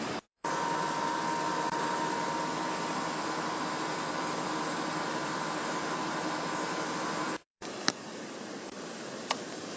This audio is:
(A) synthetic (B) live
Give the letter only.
A